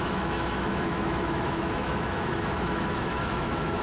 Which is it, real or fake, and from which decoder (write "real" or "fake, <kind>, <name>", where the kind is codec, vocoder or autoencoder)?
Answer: fake, autoencoder, DAC-VAE